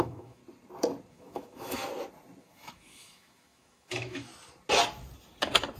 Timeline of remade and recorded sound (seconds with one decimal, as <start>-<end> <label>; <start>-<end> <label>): 0.0-0.4 remade; 0.4-1.1 recorded; 1.1-1.8 remade; 1.8-2.4 recorded; 2.4-4.3 remade; 4.3-5.8 recorded